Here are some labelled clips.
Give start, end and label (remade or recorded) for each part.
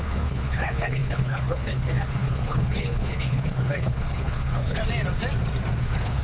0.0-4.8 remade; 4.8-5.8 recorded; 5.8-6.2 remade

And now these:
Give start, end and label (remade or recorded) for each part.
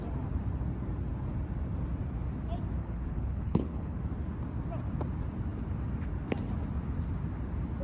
0.0-2.8 recorded; 2.8-4.0 remade; 4.0-7.8 recorded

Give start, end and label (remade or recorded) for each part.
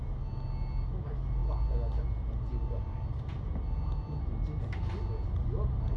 0.0-6.0 recorded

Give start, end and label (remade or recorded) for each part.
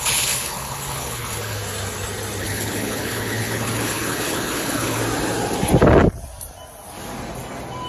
0.0-1.6 remade; 1.6-2.4 recorded; 2.4-5.0 remade; 5.0-7.9 recorded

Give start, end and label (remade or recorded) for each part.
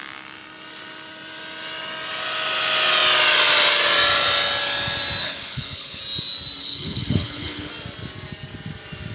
0.0-5.2 recorded; 5.2-6.0 remade; 6.0-6.6 recorded; 6.6-7.7 remade; 7.7-9.1 recorded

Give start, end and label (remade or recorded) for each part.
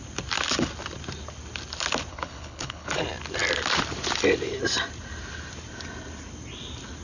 0.0-2.1 recorded; 2.1-3.0 remade; 3.0-7.0 recorded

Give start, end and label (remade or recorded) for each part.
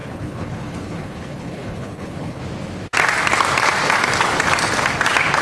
0.0-2.4 remade; 2.4-5.4 recorded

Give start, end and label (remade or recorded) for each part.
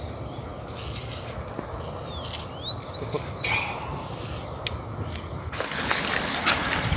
0.0-5.4 recorded; 5.4-6.0 remade; 6.0-7.0 recorded